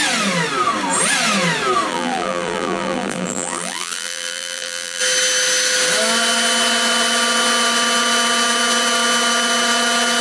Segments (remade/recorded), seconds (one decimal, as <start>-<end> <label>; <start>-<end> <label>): 0.0-1.9 recorded; 1.9-5.0 remade; 5.0-10.2 recorded